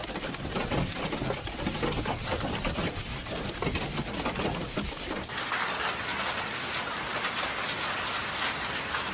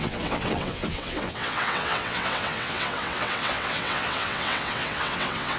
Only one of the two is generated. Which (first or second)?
second